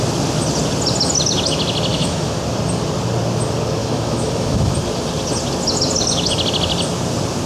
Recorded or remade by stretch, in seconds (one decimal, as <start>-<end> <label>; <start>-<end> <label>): 0.0-1.9 recorded; 1.9-2.4 remade; 2.4-3.8 recorded; 3.8-4.7 remade; 4.7-7.5 recorded

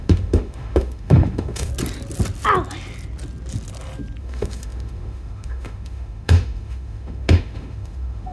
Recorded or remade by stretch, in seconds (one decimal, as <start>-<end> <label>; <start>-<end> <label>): 0.0-1.7 remade; 1.7-4.2 recorded; 4.2-8.3 remade

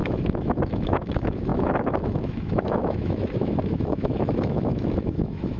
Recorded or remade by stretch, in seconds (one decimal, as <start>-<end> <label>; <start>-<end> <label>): 0.0-5.6 remade

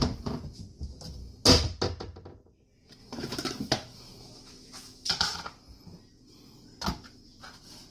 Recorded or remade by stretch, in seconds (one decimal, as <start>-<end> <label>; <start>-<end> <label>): 0.0-3.0 recorded; 3.0-5.1 remade; 5.1-7.9 recorded

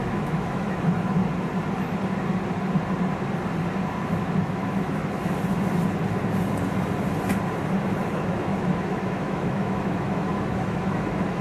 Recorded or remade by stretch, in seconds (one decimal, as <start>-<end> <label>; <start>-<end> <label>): 0.0-1.2 remade; 1.2-4.4 recorded; 4.4-5.0 remade; 5.0-8.1 recorded; 8.1-11.4 remade

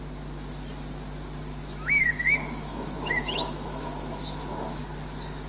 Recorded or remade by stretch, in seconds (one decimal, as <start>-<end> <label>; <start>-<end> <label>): 0.0-1.5 recorded; 1.5-4.8 remade; 4.8-5.5 recorded

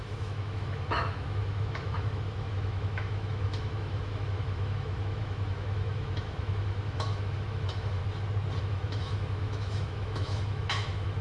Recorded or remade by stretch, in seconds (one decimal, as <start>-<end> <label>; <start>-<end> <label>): 0.0-8.0 remade; 8.0-8.6 recorded; 8.6-11.2 remade